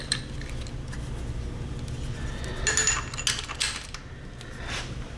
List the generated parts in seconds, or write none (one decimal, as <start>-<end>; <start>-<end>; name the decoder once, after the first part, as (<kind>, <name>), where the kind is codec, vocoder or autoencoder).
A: none